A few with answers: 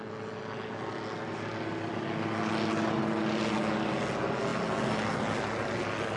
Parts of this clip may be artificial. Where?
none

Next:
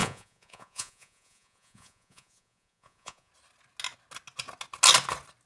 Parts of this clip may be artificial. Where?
0.0-3.3 (vocoder, Vocos)

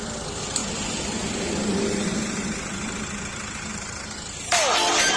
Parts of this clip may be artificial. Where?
0.6-3.7 (vocoder, BigVGAN v2)

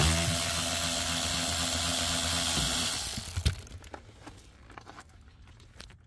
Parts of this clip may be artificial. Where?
none

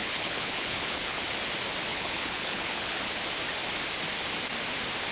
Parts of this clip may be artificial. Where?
0.0-1.2 (codec, HILCodec); 1.9-3.1

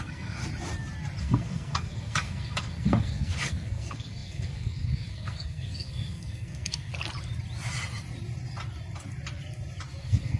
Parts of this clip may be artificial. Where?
0.0-0.4 (codec, SNAC); 1.2-6.9; 10.0-10.4

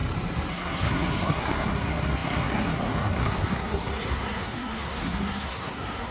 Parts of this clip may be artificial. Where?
0.5-6.1 (codec, SNAC)

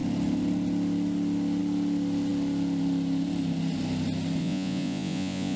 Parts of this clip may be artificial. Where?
4.4-5.6 (vocoder, Vocos)